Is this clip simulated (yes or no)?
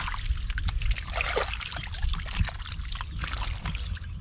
no